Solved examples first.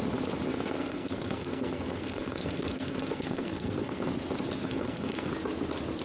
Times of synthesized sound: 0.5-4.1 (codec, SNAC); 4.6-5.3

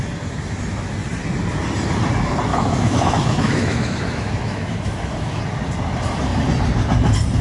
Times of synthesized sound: 2.5-5.4 (autoencoder, DAC-VAE)

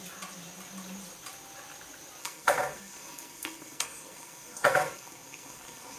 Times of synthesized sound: 2.2-6.0 (codec, SNAC)